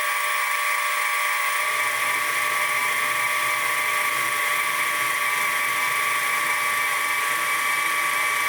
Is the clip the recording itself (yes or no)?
yes